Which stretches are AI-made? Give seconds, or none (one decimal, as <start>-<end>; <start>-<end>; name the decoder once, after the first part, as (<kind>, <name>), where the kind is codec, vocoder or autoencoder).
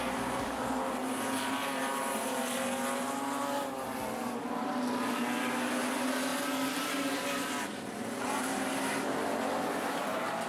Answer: none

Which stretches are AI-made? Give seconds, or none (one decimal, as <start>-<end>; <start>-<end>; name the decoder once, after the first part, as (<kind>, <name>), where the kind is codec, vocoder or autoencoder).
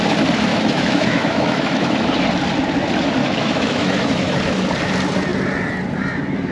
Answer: 0.5-2.1 (autoencoder, DAC-VAE); 3.2-4.4